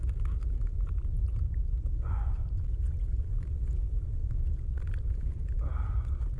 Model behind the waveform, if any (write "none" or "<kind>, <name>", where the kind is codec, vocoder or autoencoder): vocoder, BigVGAN v2